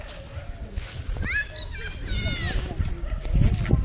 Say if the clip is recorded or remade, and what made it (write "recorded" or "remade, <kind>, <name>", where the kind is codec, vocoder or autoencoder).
recorded